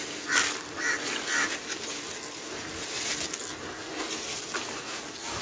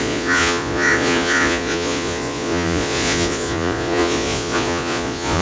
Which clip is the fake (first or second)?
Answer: second